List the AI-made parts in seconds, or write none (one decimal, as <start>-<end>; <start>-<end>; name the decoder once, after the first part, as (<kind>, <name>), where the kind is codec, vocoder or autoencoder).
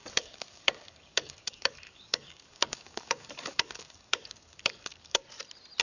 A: 0.0-5.2 (codec, DAC)